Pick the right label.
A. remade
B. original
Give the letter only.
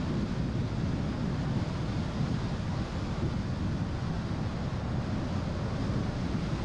B